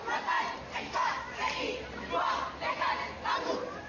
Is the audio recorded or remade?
recorded